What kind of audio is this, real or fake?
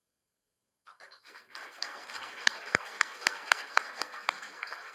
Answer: fake